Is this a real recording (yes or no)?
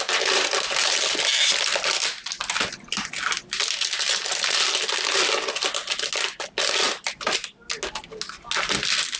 yes